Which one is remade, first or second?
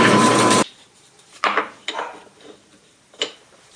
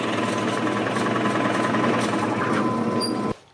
first